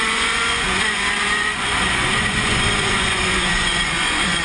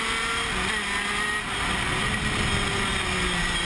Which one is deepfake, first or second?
first